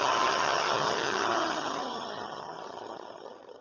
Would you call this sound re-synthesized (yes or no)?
yes